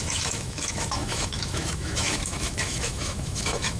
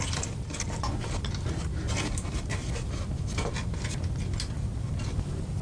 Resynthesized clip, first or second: first